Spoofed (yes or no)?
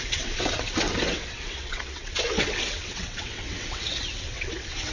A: yes